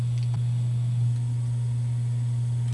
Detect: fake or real real